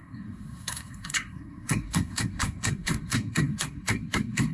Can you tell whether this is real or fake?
fake